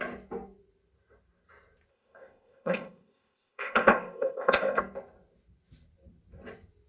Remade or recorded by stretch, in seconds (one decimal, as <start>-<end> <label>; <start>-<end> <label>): 0.0-1.9 recorded; 1.9-4.8 remade; 4.8-6.9 recorded

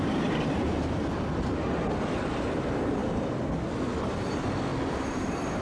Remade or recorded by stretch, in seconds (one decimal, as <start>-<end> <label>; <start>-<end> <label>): 0.0-0.7 remade; 0.7-2.6 recorded; 2.6-3.0 remade; 3.0-4.0 recorded; 4.0-5.6 remade

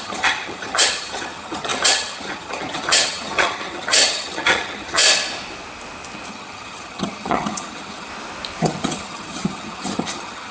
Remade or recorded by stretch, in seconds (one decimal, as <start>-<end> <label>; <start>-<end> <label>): 0.0-5.0 remade; 5.0-6.3 recorded; 6.3-8.1 remade; 8.1-8.6 recorded; 8.6-10.5 remade

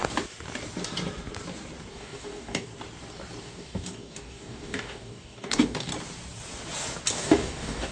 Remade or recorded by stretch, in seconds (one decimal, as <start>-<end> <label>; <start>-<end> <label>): 0.0-1.9 recorded; 1.9-2.7 remade; 2.7-3.4 recorded; 3.4-5.9 remade; 5.9-7.1 recorded; 7.1-7.9 remade

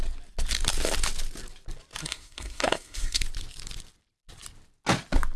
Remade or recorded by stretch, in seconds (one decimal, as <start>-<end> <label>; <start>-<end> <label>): 0.0-2.0 recorded; 2.0-3.2 remade; 3.2-5.4 recorded

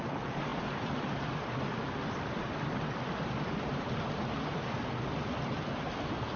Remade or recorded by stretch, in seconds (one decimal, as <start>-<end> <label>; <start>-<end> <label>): 0.0-6.4 recorded